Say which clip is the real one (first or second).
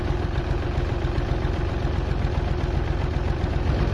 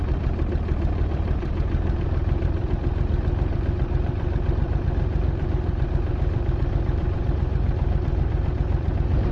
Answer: first